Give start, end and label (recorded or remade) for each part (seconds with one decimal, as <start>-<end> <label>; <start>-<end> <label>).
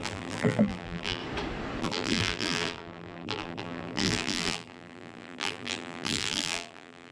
0.0-1.2 remade; 1.2-1.8 recorded; 1.8-7.1 remade